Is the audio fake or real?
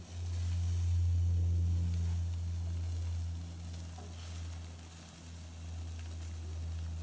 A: real